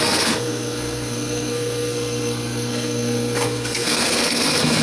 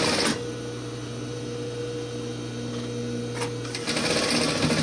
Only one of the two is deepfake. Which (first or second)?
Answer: first